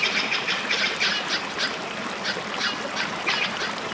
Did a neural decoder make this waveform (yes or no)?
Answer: no